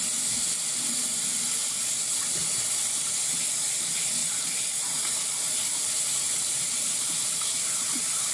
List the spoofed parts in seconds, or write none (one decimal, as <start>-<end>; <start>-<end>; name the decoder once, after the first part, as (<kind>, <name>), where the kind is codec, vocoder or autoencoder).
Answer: none